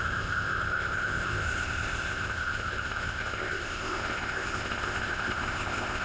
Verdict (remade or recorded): remade